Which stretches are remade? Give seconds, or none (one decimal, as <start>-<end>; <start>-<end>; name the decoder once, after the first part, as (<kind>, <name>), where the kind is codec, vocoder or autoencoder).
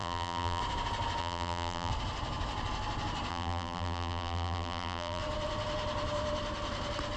0.0-0.6 (vocoder, BigVGAN v2); 1.2-1.9; 3.3-5.2